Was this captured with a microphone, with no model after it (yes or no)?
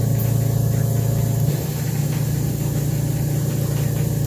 yes